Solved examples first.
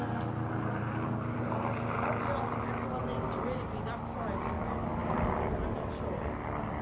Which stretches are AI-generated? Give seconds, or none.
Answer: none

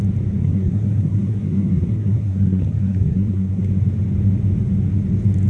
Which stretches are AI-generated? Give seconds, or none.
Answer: 0.4-3.7 (codec, SNAC)

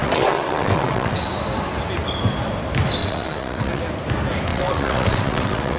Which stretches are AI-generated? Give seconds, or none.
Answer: 0.0-1.3 (vocoder, WaveNeXt); 3.0-3.8; 4.5-5.8

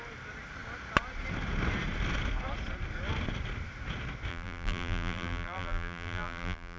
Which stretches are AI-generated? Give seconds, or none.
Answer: 4.3-6.8 (vocoder, BigVGAN v2)

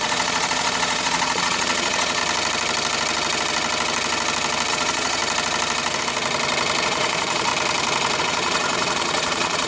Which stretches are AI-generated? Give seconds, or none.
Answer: 0.0-2.2 (vocoder, Vocos); 4.7-5.2; 6.8-7.5; 8.2-9.7